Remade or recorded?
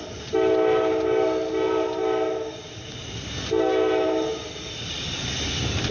recorded